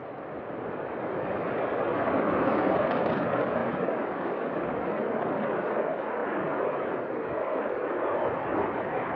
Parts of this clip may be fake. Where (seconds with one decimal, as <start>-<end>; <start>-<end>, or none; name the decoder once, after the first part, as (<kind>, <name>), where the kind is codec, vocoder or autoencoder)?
0.7-9.2 (codec, DAC)